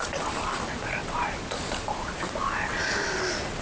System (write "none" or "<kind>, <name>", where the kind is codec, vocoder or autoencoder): none